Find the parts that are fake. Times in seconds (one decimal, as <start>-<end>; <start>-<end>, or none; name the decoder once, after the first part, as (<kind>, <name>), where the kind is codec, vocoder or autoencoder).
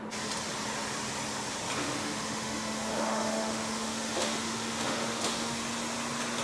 1.8-5.6 (autoencoder, DAC-VAE)